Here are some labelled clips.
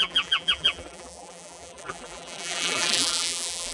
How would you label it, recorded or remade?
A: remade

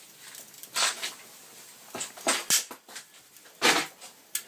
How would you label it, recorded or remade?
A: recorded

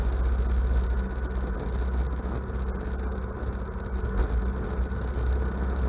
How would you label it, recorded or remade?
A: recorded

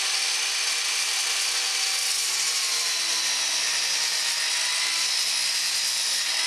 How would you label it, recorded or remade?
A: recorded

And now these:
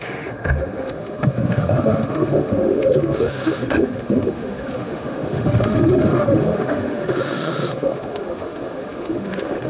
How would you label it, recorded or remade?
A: remade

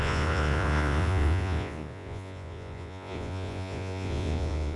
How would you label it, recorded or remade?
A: remade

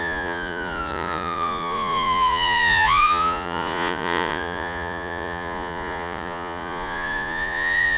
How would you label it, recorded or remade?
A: remade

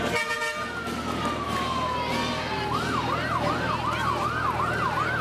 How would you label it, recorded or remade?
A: recorded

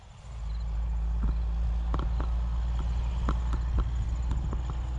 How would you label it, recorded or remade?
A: recorded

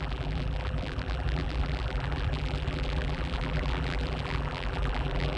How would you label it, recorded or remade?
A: remade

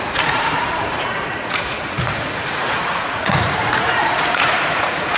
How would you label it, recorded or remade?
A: remade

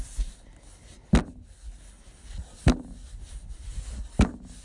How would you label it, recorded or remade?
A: recorded